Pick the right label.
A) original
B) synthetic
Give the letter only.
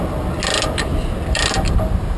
A